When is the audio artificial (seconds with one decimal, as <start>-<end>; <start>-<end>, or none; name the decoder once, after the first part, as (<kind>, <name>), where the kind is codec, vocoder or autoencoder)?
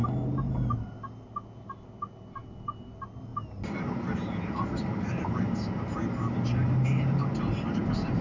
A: none